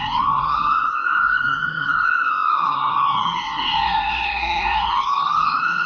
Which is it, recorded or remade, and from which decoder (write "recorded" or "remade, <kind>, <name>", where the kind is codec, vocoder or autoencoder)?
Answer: remade, codec, SNAC